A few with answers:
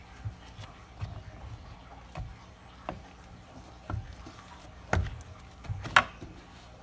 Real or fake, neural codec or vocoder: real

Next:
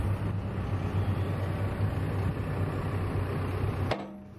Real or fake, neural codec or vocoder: real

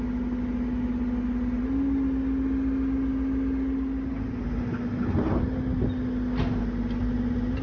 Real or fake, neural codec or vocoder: real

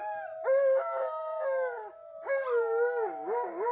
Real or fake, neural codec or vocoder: real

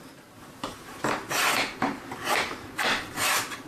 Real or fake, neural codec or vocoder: real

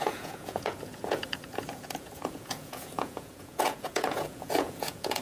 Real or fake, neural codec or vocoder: fake, vocoder, Vocos